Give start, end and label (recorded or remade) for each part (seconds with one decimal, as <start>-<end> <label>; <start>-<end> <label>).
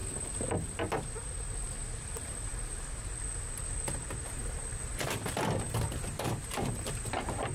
0.0-7.5 recorded